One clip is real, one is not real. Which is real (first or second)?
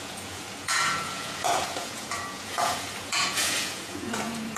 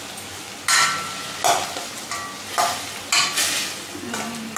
second